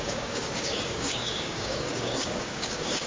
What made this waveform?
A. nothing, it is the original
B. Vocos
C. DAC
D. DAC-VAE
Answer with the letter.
C